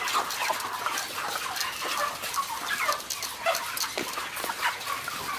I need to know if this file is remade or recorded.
recorded